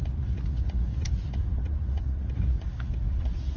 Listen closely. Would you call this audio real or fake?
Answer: fake